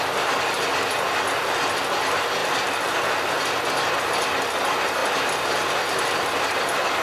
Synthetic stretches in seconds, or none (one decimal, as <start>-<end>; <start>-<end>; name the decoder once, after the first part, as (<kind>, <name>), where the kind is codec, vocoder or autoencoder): 2.4-3.6 (vocoder, BigVGAN v2); 5.0-6.4